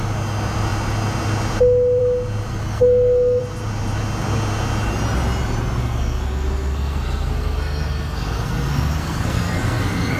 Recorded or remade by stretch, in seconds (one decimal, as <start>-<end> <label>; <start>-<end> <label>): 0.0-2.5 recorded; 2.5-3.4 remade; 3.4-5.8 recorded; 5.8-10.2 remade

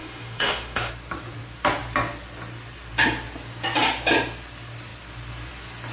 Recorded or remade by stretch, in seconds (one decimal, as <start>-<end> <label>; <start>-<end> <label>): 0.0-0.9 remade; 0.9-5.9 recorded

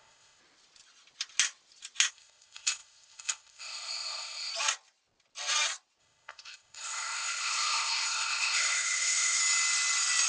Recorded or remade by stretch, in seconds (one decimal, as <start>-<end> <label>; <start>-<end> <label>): 0.0-0.4 remade; 0.4-2.1 recorded; 2.1-4.5 remade; 4.5-6.0 recorded; 6.0-9.4 remade; 9.4-10.3 recorded